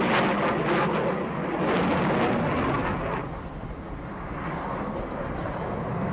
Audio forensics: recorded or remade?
recorded